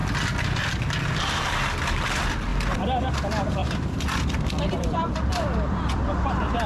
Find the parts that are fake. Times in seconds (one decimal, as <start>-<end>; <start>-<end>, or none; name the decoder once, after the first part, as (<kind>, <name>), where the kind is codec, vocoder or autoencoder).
3.6-6.7 (vocoder, BigVGAN v2)